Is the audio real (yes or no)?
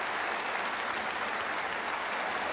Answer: yes